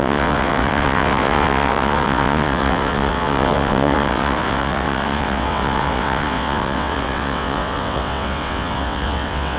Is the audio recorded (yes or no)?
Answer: no